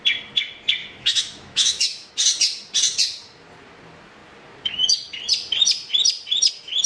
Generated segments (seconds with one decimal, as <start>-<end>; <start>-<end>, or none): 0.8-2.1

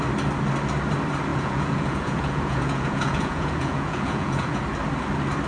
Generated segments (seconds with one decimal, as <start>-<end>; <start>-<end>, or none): 1.3-4.6

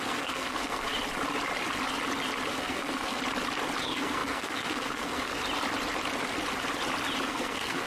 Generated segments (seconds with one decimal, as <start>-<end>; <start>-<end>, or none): 0.0-0.9; 2.5-3.2; 3.8-5.4; 7.3-7.9

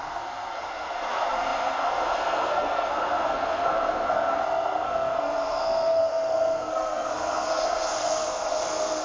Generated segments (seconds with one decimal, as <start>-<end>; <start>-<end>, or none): 0.0-9.0

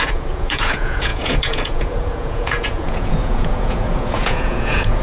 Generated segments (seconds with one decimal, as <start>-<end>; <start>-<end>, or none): 0.0-5.0

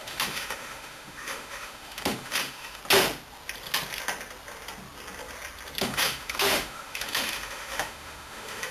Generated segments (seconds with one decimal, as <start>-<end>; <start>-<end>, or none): 0.0-2.8; 5.8-8.7

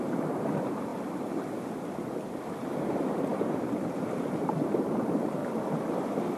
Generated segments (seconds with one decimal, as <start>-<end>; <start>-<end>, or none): 0.0-0.9; 2.8-5.4